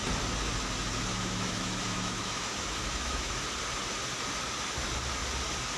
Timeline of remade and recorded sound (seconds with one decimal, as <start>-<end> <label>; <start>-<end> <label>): 0.0-1.1 recorded; 1.1-3.3 remade; 3.3-5.8 recorded